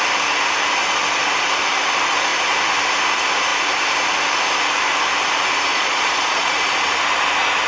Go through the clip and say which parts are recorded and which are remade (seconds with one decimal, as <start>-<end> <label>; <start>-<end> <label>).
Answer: 0.0-5.7 recorded; 5.7-6.5 remade; 6.5-7.7 recorded